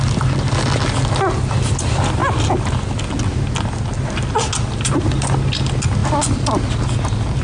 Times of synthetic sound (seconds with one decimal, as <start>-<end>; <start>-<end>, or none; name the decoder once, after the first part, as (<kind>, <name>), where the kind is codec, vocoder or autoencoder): none